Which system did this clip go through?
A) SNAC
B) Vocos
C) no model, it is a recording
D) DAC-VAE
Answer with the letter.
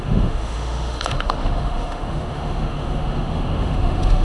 D